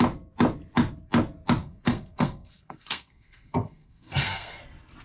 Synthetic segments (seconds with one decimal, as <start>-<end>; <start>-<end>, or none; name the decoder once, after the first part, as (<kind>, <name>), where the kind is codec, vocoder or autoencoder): 1.6-4.6 (codec, SNAC)

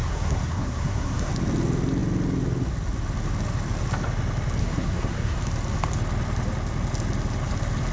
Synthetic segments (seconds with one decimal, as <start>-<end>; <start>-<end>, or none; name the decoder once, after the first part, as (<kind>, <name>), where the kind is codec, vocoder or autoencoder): 0.0-1.3 (codec, SNAC); 4.6-5.4

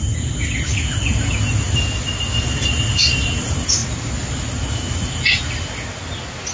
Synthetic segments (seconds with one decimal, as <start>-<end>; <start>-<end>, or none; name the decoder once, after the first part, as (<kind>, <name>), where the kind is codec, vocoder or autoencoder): none

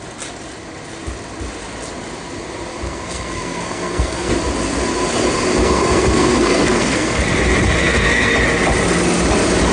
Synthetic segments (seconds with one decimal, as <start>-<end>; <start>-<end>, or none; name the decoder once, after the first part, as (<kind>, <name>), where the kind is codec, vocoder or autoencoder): 2.7-4.3 (codec, SNAC); 5.6-7.2; 7.8-8.3

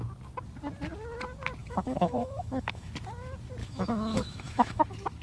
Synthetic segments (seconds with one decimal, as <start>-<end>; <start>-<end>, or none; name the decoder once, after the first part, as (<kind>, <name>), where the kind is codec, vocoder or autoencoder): 1.6-2.9 (autoencoder, DAC-VAE); 3.6-4.8